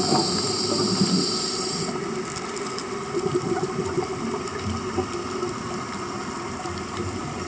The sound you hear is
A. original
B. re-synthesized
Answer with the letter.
A